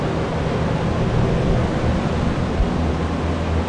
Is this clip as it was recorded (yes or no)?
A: yes